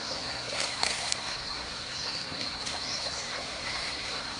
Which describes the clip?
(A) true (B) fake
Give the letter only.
B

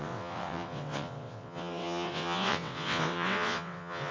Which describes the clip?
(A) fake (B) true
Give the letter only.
A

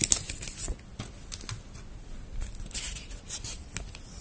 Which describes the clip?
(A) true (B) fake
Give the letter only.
A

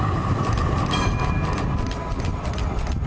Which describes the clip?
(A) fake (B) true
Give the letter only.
A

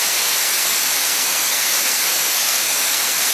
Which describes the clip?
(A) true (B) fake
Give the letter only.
B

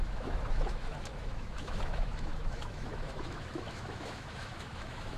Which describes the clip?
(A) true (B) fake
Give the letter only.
B